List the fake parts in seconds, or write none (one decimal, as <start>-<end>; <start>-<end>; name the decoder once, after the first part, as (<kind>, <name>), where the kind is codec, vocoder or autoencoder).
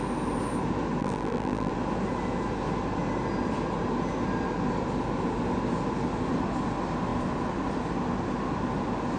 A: 1.0-1.7 (vocoder, BigVGAN v2)